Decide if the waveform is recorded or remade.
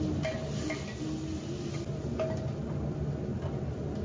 recorded